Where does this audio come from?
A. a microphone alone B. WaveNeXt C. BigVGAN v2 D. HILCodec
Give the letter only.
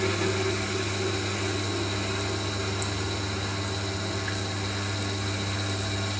A